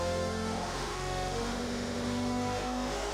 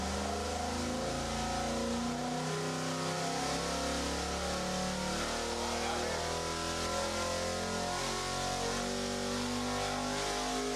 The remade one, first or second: first